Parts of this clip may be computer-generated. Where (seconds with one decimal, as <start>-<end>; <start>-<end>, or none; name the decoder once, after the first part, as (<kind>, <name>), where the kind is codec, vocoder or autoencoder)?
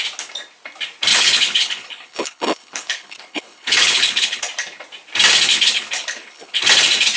1.1-4.4 (codec, HILCodec); 5.5-6.6